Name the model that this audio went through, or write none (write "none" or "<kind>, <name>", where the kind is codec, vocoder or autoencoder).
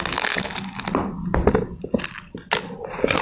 none